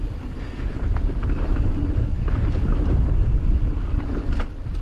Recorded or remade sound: recorded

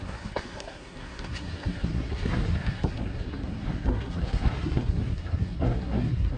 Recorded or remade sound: remade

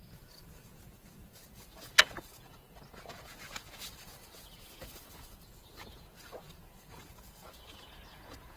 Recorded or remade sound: remade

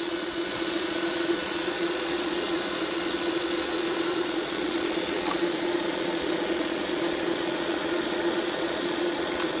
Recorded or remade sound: remade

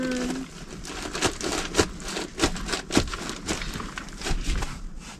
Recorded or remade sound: recorded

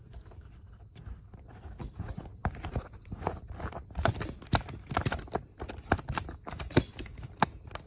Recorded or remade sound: recorded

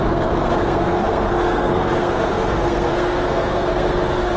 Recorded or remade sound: remade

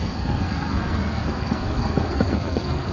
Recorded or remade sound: remade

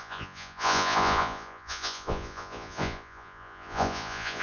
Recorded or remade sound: remade